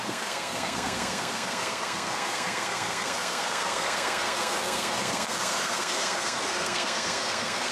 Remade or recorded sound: remade